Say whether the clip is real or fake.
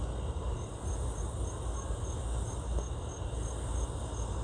real